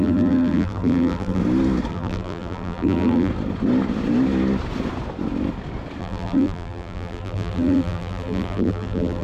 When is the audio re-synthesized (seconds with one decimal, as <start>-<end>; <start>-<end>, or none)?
0.0-1.4; 1.9-3.3; 6.0-9.2